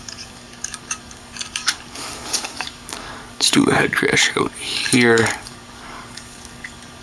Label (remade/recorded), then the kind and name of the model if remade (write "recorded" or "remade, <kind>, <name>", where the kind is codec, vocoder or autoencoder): remade, codec, DAC